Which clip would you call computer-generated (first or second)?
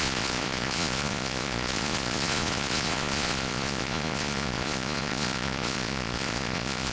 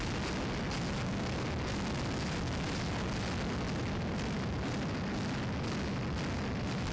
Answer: first